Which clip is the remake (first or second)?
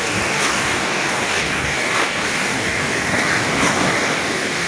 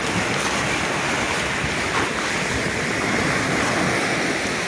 first